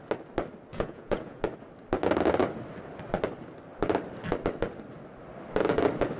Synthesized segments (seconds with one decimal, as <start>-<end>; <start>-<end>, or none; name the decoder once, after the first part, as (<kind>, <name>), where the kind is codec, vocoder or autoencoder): 0.7-1.4 (vocoder, Vocos)